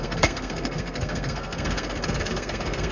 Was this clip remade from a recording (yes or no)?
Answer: yes